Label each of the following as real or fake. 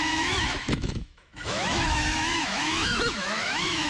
fake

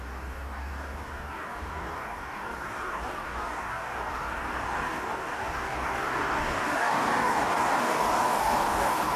fake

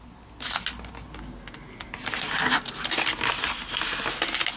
real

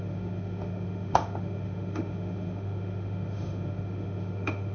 fake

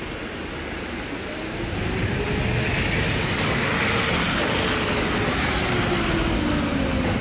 real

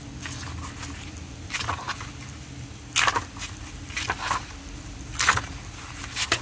real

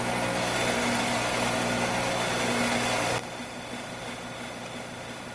real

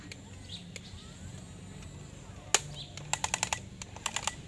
real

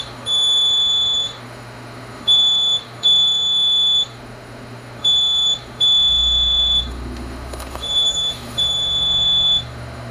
fake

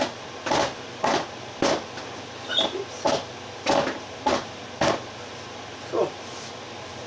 real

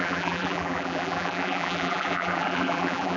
fake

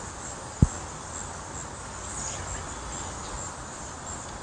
real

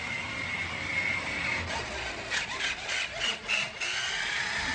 real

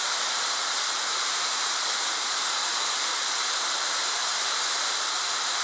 fake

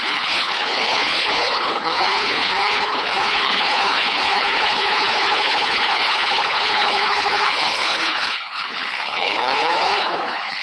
fake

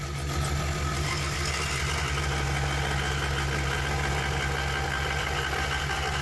real